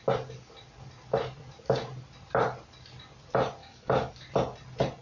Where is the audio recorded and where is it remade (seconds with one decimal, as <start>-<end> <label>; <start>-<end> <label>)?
0.0-3.6 recorded; 3.6-4.1 remade; 4.1-5.0 recorded